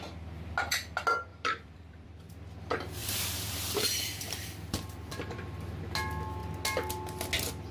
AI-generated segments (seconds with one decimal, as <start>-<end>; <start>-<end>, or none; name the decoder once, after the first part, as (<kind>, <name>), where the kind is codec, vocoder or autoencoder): 1.3-2.3 (vocoder, BigVGAN v2); 3.0-5.8